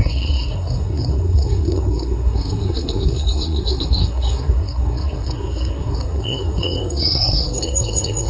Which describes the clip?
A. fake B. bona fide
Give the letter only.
A